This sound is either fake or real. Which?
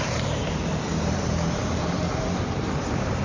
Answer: fake